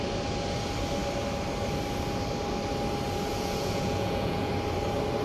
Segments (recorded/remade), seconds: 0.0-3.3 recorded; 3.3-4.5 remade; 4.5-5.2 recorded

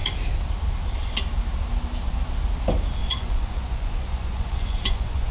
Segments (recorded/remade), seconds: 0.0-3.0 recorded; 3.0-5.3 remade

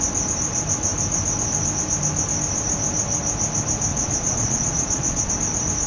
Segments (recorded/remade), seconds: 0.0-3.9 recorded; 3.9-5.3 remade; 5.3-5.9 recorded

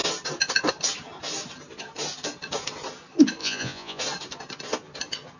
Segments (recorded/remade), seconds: 0.0-3.4 recorded; 3.4-4.0 remade; 4.0-5.4 recorded

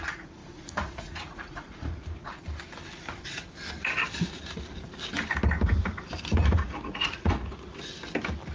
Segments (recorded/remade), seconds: 0.0-0.4 recorded; 0.4-2.4 remade; 2.4-6.3 recorded; 6.3-7.7 remade; 7.7-8.5 recorded

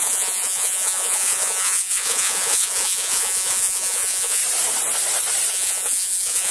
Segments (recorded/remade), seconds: 0.0-4.4 remade; 4.4-5.5 recorded; 5.5-6.5 remade